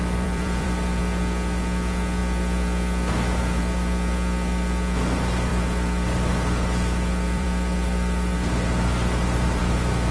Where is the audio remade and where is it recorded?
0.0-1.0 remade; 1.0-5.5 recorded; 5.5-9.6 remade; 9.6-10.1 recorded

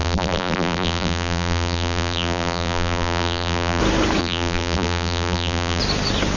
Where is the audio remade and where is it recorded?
0.0-3.8 remade; 3.8-4.2 recorded; 4.2-5.8 remade; 5.8-6.4 recorded